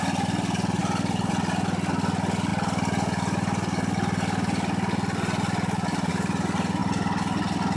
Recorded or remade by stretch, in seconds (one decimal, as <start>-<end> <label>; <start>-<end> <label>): 0.0-7.8 recorded